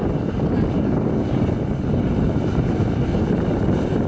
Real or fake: real